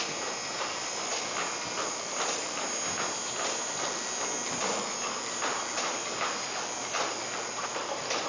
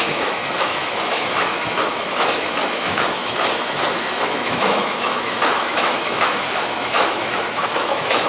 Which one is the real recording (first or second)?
first